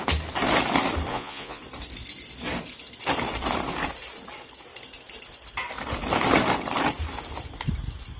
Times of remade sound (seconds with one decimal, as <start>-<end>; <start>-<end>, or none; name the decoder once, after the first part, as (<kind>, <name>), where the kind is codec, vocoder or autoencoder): 1.1-1.6 (vocoder, Vocos)